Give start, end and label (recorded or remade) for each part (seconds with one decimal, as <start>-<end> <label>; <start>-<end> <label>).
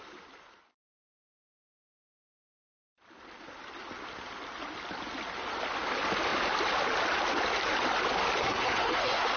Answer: 0.0-8.4 recorded; 8.4-9.4 remade